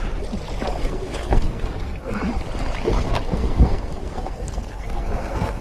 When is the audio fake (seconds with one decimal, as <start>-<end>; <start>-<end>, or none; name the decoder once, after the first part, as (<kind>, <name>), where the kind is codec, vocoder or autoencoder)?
0.8-2.2 (codec, SNAC); 2.8-5.6